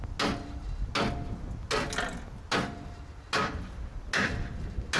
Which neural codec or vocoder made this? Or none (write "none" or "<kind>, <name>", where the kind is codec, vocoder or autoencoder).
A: none